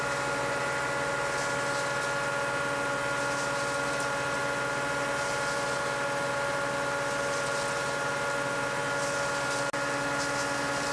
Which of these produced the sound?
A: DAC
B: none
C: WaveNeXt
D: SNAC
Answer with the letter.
B